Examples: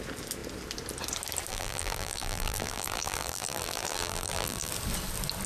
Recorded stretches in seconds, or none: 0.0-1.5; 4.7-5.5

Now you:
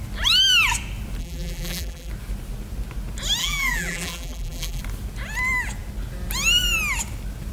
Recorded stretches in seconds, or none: 0.0-1.2; 2.1-3.4; 4.8-7.5

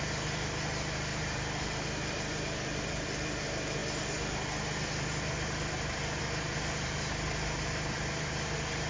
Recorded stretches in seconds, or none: 0.0-1.1; 2.4-8.9

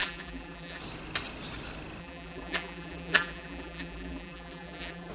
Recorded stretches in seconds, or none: 0.8-2.0

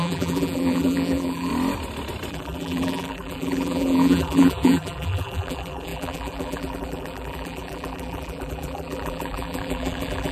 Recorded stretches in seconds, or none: 1.5-2.3

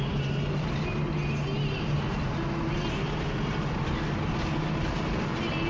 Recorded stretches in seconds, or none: 1.2-4.6

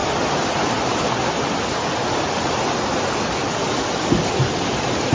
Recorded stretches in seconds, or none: 0.0-5.1

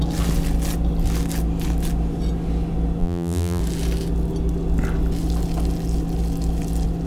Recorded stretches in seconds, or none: 0.0-3.0; 3.6-7.1